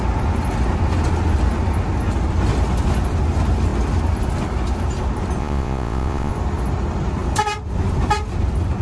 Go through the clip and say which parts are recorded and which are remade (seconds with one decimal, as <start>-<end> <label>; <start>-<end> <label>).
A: 0.0-5.4 recorded; 5.4-6.3 remade; 6.3-8.8 recorded